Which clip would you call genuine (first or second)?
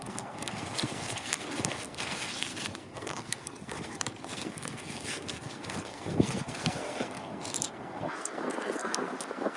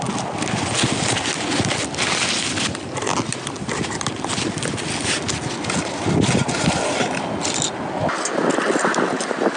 second